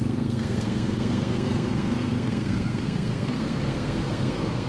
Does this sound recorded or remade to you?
remade